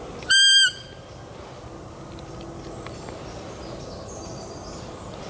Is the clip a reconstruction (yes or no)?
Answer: no